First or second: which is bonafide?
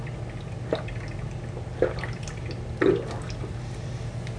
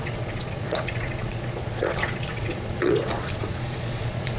first